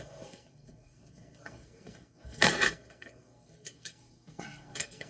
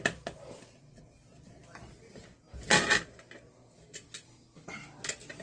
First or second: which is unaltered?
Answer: second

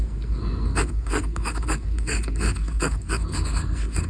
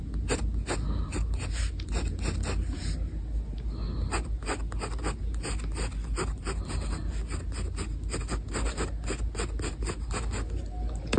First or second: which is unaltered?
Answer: second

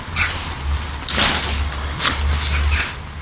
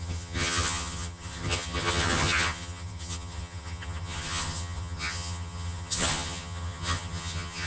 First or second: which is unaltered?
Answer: first